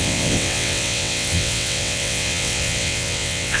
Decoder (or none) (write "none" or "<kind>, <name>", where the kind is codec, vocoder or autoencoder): vocoder, WaveNeXt